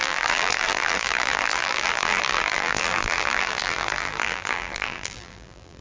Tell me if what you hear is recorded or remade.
remade